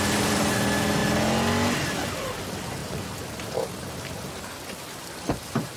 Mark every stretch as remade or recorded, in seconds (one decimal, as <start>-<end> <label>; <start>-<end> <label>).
0.0-1.0 remade; 1.0-2.1 recorded; 2.1-5.8 remade